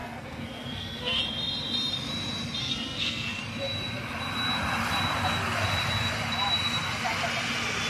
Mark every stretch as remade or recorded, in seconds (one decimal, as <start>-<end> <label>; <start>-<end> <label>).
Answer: 0.0-1.2 remade; 1.2-2.6 recorded; 2.6-3.4 remade; 3.4-7.9 recorded